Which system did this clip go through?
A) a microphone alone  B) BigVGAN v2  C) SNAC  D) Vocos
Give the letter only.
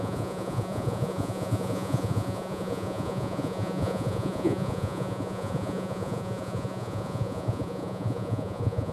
D